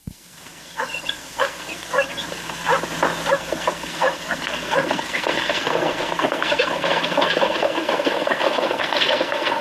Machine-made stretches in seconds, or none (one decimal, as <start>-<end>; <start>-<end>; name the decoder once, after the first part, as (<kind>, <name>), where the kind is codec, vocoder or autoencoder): 0.0-2.7 (codec, SNAC); 3.3-9.6